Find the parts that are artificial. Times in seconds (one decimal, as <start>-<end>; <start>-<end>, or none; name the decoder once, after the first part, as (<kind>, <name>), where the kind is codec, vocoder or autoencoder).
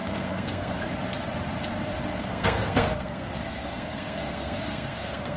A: 0.0-0.8 (codec, SNAC); 2.1-5.4